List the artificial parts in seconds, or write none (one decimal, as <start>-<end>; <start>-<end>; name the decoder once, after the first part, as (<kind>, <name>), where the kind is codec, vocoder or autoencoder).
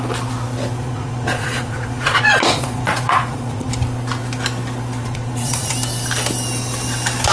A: 0.8-3.7 (vocoder, Vocos); 5.0-5.7